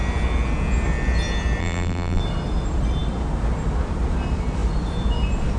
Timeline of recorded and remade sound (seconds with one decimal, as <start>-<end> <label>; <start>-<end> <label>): 0.0-1.6 recorded; 1.6-2.2 remade; 2.2-5.6 recorded